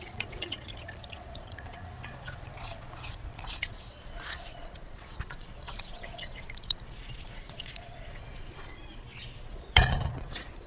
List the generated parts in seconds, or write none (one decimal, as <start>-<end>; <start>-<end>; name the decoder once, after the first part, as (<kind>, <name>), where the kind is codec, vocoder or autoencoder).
0.0-10.7 (vocoder, Vocos)